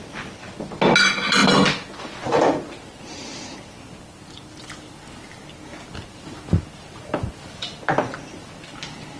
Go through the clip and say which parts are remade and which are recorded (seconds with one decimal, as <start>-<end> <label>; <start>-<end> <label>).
0.0-9.2 recorded